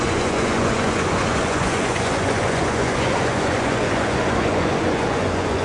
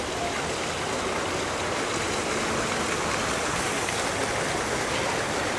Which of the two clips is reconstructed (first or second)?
first